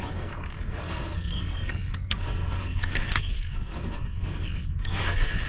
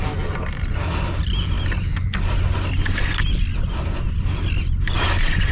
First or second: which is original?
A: second